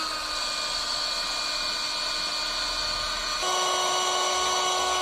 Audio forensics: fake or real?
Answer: real